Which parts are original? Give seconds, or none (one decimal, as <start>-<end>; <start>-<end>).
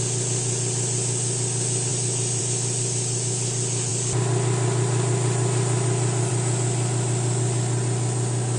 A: 0.0-8.6